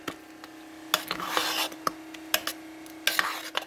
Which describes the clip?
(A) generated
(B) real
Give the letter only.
B